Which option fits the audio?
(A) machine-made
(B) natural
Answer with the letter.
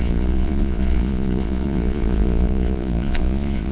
A